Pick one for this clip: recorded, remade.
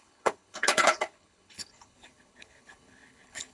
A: remade